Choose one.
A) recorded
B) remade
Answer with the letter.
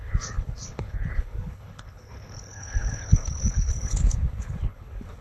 B